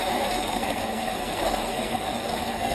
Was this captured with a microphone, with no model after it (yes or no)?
no